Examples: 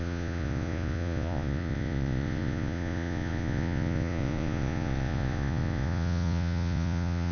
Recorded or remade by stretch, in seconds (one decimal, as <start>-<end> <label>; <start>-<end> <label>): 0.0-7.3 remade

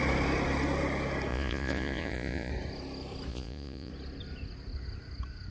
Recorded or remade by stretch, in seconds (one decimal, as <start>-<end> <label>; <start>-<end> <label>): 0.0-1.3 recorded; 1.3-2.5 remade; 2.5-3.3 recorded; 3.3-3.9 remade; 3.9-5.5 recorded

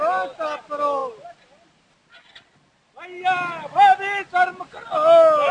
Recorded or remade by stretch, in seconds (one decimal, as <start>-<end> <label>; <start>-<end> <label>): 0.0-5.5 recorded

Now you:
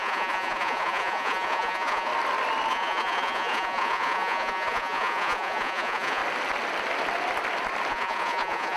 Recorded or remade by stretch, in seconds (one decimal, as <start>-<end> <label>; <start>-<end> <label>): 0.0-2.1 remade; 2.1-2.7 recorded; 2.7-6.2 remade; 6.2-7.9 recorded; 7.9-8.8 remade

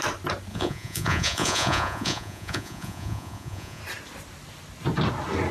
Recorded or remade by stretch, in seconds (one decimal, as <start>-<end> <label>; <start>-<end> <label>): 0.0-0.5 recorded; 0.5-3.8 remade; 3.8-5.5 recorded